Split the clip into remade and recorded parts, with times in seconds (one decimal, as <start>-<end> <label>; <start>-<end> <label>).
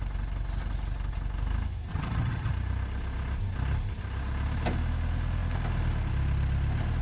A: 0.0-1.9 recorded; 1.9-2.5 remade; 2.5-7.0 recorded